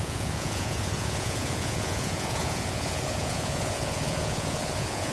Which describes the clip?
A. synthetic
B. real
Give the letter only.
A